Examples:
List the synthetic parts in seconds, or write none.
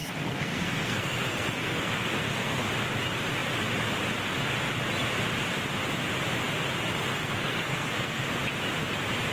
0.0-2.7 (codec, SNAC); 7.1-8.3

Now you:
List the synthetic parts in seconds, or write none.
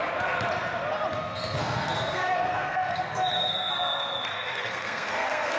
1.1-3.7 (codec, SNAC); 4.3-5.6